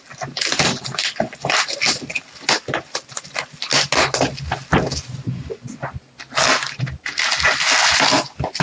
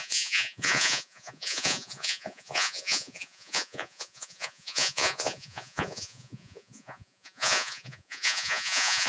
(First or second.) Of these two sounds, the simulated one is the second